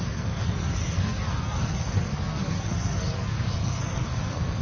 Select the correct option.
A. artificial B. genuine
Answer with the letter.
A